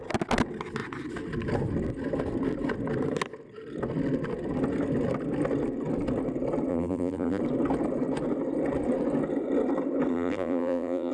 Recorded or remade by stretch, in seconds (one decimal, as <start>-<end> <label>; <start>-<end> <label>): 0.0-6.7 recorded; 6.7-7.4 remade; 7.4-10.1 recorded; 10.1-11.1 remade